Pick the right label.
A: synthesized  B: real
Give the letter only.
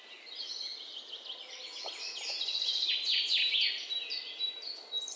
B